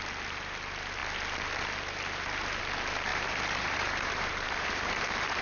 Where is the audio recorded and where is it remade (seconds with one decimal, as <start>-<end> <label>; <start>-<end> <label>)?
0.0-3.1 recorded; 3.1-5.4 remade

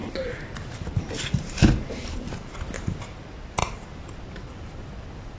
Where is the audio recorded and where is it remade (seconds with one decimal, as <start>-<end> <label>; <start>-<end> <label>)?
0.0-2.2 remade; 2.2-3.6 recorded; 3.6-4.2 remade; 4.2-5.4 recorded

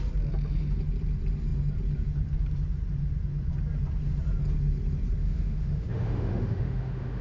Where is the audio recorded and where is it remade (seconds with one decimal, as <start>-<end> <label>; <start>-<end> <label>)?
0.0-5.2 recorded; 5.2-7.2 remade

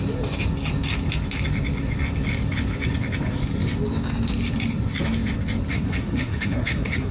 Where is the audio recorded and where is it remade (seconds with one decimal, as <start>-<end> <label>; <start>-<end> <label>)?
0.0-5.7 recorded; 5.7-7.1 remade